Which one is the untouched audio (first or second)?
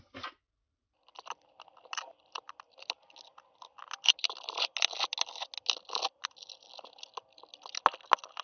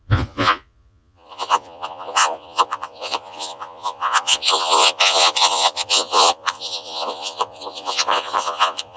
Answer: first